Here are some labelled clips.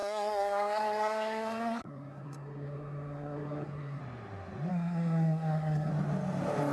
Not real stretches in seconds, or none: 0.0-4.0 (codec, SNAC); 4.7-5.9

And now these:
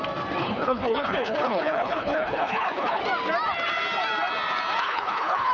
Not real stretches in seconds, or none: 0.4-3.0 (codec, HILCodec); 4.8-5.5

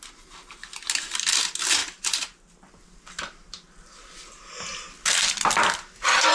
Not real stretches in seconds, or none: none

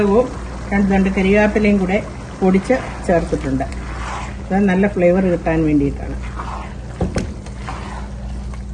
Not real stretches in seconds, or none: none

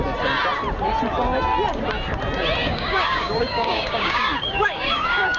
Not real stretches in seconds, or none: 2.6-5.4 (codec, DAC)

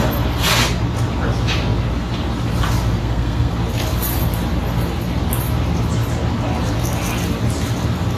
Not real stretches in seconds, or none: 3.0-3.5 (codec, SNAC)

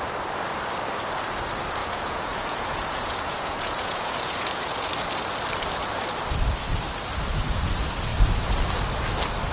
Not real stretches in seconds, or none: 1.8-4.9 (vocoder, Vocos)

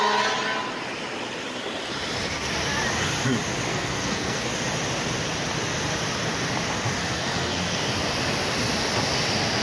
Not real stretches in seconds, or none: 3.7-4.5 (codec, SNAC); 7.0-7.8